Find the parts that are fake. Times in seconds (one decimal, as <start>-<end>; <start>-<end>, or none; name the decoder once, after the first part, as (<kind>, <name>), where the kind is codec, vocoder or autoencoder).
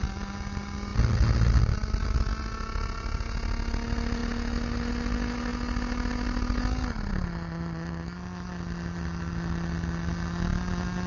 none